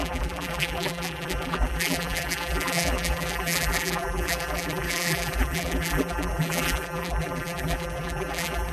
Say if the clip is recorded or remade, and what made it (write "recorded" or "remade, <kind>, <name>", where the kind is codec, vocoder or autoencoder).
remade, vocoder, BigVGAN v2